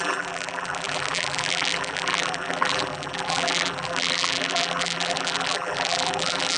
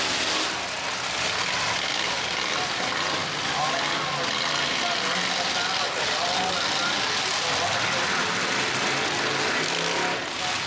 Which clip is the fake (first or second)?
first